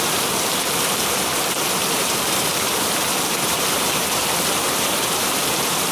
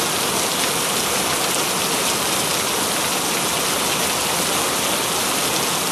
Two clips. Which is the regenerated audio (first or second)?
first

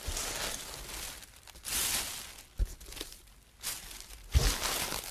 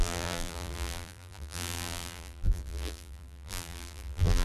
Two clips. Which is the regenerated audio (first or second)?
second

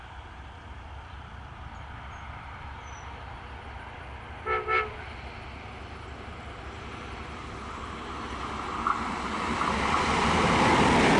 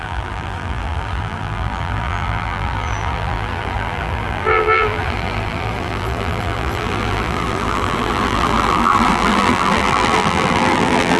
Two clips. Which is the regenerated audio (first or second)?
second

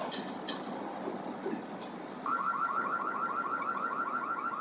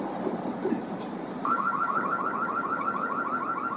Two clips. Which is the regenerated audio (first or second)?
second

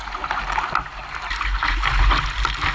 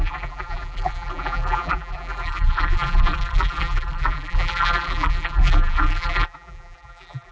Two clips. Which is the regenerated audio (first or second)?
second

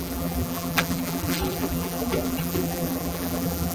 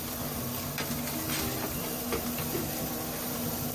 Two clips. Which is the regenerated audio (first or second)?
first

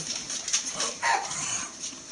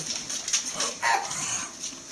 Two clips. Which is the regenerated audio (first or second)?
first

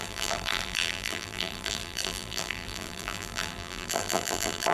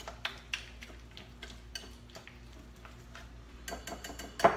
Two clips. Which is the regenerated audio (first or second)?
first